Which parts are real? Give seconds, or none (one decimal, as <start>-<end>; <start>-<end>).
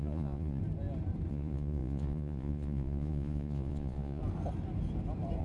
0.6-1.3; 4.2-5.4